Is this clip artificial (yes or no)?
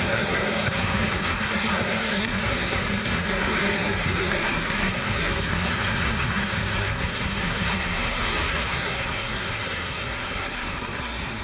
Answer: yes